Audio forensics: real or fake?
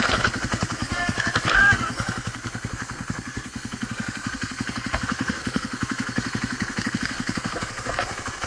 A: fake